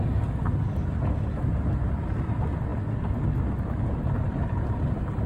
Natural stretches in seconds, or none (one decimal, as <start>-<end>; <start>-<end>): 0.0-5.3